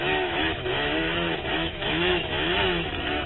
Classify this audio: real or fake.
fake